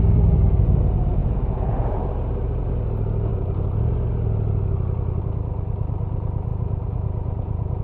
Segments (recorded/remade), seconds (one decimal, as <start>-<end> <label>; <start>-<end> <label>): 0.0-1.2 recorded; 1.2-2.0 remade; 2.0-6.5 recorded; 6.5-7.8 remade